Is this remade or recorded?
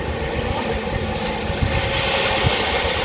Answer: recorded